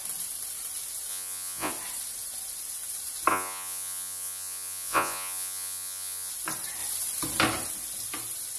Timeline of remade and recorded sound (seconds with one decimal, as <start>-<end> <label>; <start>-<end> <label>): 0.0-1.1 recorded; 1.1-1.7 remade; 1.7-3.3 recorded; 3.3-6.3 remade; 6.3-8.6 recorded